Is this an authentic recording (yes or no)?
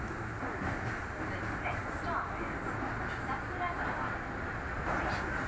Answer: yes